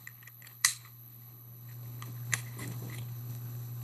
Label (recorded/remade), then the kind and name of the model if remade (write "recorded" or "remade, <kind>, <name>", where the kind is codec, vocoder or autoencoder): remade, codec, HILCodec